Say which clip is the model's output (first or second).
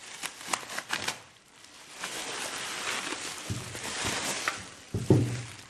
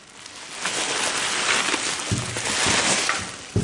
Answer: first